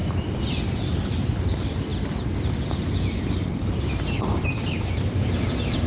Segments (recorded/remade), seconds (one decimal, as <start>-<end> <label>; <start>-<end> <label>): 0.0-5.9 recorded